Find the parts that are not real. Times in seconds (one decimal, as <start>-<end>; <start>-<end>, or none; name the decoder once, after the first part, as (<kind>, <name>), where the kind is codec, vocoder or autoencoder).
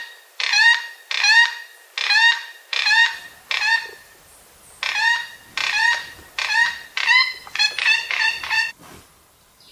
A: 0.0-1.1 (vocoder, BigVGAN v2); 2.7-3.4; 5.6-7.7